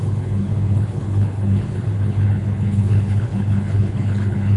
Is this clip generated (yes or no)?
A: yes